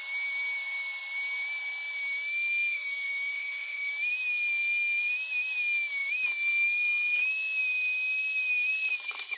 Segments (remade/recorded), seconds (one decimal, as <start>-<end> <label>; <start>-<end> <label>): 0.0-2.7 recorded; 2.7-3.9 remade; 3.9-9.4 recorded